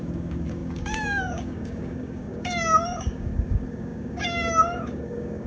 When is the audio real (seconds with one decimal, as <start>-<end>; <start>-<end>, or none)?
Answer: none